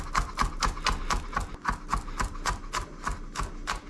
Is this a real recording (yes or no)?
yes